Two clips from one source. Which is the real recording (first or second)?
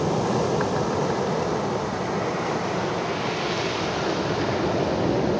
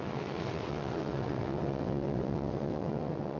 first